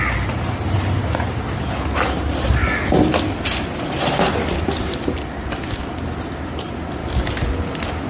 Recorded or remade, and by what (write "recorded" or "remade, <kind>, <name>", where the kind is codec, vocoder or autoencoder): recorded